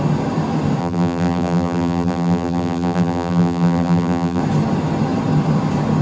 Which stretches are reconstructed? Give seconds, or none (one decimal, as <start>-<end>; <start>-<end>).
0.8-4.4